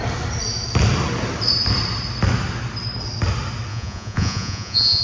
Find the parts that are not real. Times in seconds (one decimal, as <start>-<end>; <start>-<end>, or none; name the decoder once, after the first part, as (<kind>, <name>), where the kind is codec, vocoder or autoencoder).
3.7-5.0 (vocoder, Vocos)